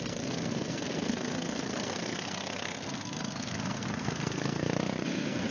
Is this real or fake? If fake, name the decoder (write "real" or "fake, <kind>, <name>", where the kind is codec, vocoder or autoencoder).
fake, codec, SNAC